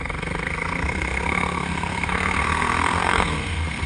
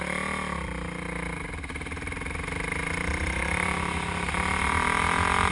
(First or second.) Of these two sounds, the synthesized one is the first